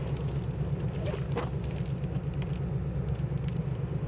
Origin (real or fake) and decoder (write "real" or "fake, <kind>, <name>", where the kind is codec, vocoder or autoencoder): real